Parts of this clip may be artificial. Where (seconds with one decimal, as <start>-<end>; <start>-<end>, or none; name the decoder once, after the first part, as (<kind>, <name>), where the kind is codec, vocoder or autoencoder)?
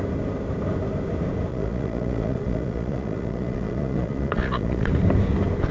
1.5-4.9 (vocoder, Vocos)